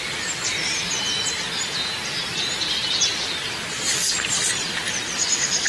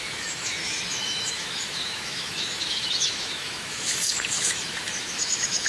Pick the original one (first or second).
first